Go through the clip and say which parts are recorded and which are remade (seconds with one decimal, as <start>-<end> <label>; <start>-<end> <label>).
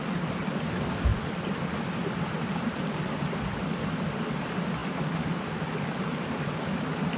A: 0.0-7.2 recorded